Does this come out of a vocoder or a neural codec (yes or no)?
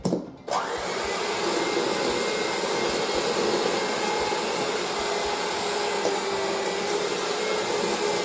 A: no